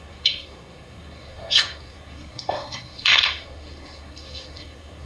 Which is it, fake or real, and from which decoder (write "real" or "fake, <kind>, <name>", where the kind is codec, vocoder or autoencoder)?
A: fake, codec, SNAC